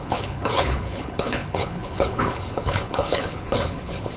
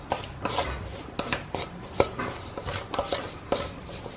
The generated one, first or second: first